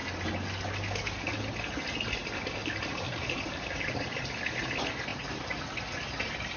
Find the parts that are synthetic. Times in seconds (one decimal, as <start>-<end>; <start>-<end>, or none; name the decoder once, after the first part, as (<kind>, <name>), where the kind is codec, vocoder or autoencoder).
2.6-4.2 (vocoder, BigVGAN v2); 5.1-5.6

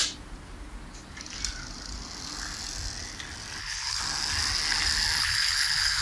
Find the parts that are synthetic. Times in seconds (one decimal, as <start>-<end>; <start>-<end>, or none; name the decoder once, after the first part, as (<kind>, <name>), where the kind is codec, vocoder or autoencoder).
3.6-4.0 (codec, HILCodec); 5.2-6.0

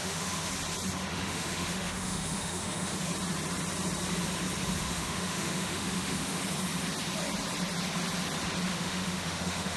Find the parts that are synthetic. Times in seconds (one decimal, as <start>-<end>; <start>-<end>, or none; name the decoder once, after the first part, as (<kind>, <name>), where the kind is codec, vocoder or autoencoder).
0.0-0.5 (autoencoder, DAC-VAE); 1.1-3.1; 4.8-6.4; 8.7-9.8

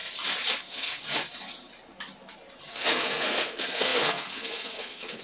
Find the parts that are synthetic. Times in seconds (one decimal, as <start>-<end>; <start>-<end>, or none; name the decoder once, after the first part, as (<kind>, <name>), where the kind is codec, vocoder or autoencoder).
0.6-1.0 (codec, SNAC); 2.7-5.2

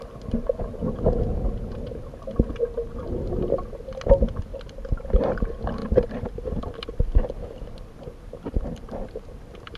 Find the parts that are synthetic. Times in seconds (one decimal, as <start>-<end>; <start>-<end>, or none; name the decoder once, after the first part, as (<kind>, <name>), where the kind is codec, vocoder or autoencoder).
4.5-5.2 (vocoder, BigVGAN v2); 5.8-9.8

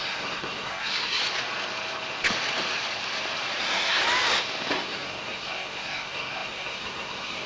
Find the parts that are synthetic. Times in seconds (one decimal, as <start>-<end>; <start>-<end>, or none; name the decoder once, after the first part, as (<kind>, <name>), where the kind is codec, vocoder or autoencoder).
0.0-1.2 (codec, SNAC); 3.6-4.0; 4.7-7.5